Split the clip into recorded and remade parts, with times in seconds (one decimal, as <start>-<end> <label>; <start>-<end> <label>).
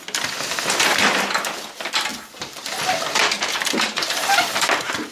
0.0-3.2 recorded; 3.2-5.1 remade